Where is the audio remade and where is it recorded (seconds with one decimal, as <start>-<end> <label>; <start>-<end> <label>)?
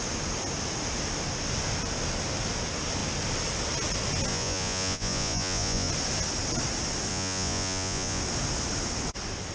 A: 0.0-4.3 recorded; 4.3-5.9 remade; 5.9-7.1 recorded; 7.1-8.2 remade; 8.2-9.5 recorded